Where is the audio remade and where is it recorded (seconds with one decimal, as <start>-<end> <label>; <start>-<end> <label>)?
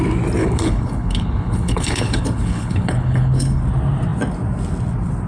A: 0.0-0.4 recorded; 0.4-3.6 remade; 3.6-5.3 recorded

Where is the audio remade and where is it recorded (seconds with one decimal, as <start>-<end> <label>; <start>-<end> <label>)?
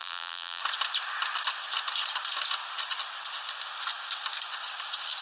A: 0.0-0.6 remade; 0.6-5.2 recorded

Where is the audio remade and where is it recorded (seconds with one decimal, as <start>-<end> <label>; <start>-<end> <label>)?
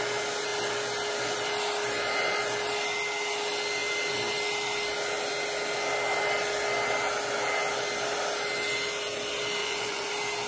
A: 0.0-9.6 recorded; 9.6-10.1 remade; 10.1-10.5 recorded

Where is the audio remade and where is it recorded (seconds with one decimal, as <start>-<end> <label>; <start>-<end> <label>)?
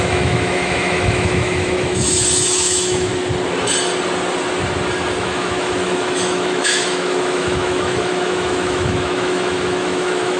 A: 0.0-3.1 remade; 3.1-5.2 recorded; 5.2-10.4 remade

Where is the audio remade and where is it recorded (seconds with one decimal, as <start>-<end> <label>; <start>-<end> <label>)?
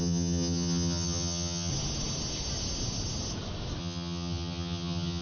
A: 0.0-1.7 remade; 1.7-3.8 recorded; 3.8-5.2 remade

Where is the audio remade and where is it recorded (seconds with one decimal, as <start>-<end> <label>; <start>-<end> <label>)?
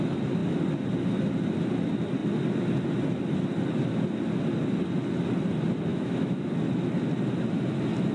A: 0.0-5.9 recorded; 5.9-6.5 remade; 6.5-8.1 recorded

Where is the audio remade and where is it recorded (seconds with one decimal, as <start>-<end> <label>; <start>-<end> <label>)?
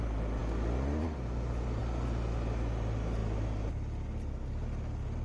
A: 0.0-5.2 recorded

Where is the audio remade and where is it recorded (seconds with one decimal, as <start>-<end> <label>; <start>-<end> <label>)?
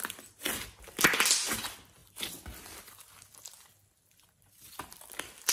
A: 0.0-5.5 recorded